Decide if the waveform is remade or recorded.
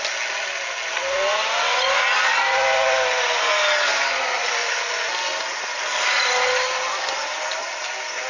recorded